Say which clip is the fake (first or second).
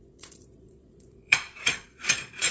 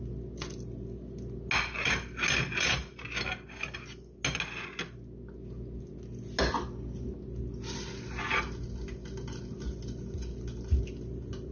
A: first